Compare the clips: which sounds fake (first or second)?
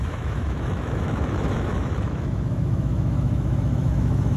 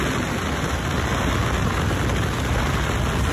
first